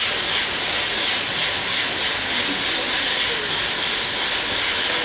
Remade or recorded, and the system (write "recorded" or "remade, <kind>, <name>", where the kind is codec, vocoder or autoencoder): recorded